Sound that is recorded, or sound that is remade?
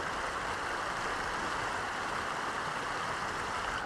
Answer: recorded